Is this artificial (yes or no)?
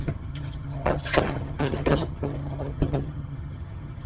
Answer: yes